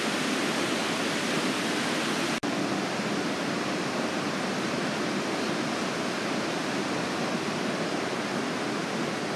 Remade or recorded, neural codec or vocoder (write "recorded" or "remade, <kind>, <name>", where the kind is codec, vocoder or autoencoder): recorded